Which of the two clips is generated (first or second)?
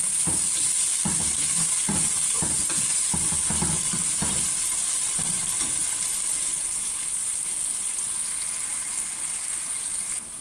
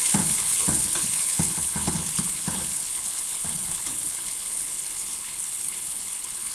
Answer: second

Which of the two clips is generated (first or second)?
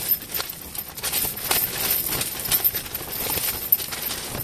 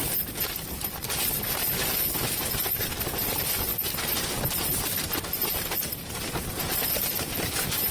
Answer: second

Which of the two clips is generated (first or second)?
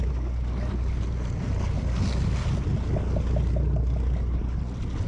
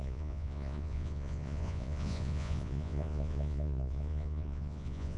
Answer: second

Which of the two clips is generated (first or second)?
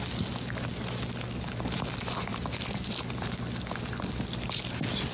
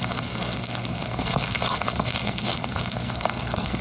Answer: second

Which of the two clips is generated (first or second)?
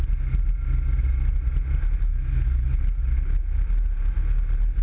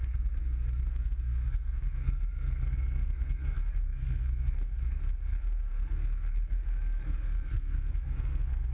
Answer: second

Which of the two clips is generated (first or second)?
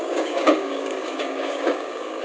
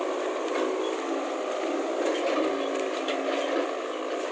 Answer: first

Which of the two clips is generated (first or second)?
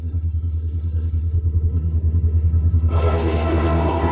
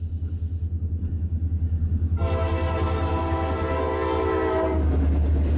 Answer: first